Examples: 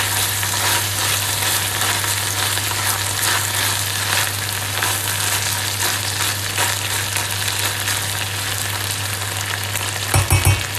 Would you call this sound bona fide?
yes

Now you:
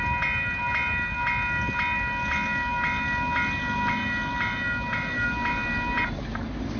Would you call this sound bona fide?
yes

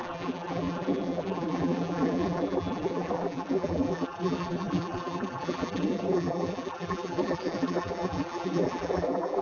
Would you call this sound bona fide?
no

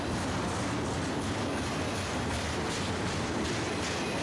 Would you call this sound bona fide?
yes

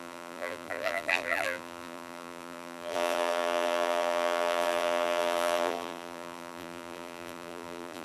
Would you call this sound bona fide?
no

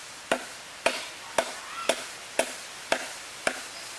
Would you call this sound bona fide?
yes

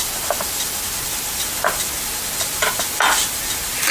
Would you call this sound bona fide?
yes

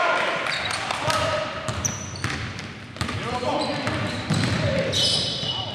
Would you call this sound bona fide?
no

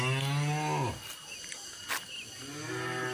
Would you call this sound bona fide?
yes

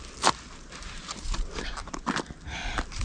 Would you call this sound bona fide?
yes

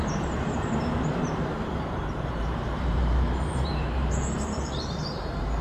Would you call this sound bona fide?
no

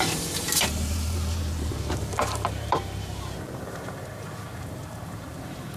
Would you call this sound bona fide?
no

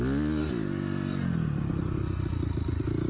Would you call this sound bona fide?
yes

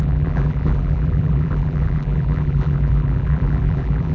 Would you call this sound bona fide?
no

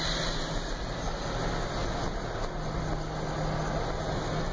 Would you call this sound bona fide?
yes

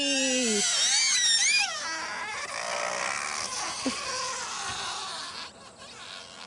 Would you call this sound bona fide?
yes